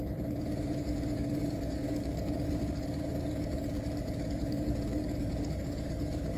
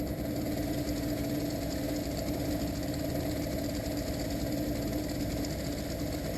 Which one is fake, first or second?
first